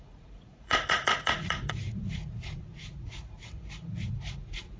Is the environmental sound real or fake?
fake